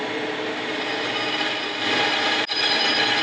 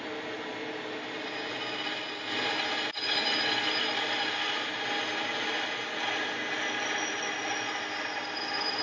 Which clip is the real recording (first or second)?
second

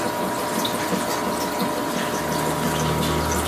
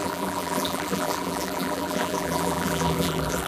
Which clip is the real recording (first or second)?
first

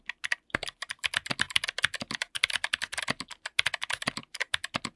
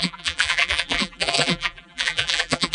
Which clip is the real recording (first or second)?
first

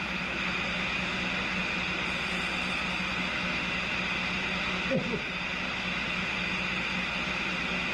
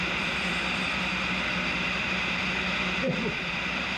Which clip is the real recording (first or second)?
first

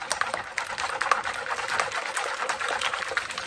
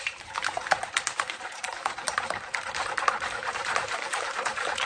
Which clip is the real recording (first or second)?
first